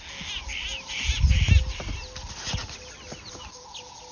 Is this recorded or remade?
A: recorded